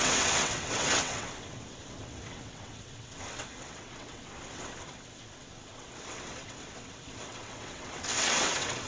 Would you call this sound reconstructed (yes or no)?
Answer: yes